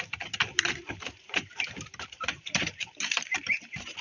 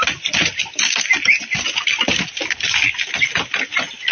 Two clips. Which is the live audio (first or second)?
second